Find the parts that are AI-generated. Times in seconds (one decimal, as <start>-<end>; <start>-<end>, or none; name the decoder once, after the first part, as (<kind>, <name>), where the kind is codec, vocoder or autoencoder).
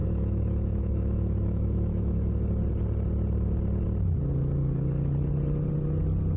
0.0-2.3 (autoencoder, DAC-VAE)